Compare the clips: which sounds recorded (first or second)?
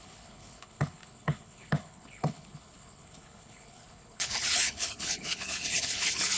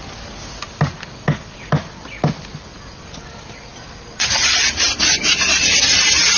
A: second